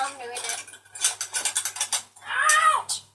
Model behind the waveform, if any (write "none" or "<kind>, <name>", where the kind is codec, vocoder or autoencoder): none